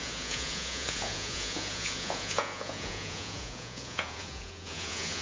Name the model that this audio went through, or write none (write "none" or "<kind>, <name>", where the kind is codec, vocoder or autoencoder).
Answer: vocoder, Vocos